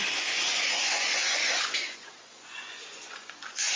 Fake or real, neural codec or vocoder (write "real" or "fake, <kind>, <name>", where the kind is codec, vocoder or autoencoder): fake, vocoder, Vocos